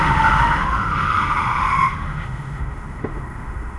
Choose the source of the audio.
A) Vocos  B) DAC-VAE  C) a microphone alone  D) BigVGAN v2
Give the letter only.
B